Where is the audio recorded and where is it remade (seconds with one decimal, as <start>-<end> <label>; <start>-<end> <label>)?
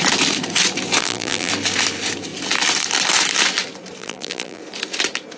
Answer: 0.0-1.0 recorded; 1.0-1.5 remade; 1.5-4.0 recorded; 4.0-4.6 remade; 4.6-5.4 recorded